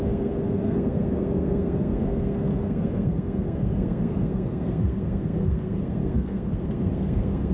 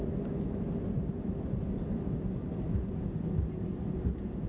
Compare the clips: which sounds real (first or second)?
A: second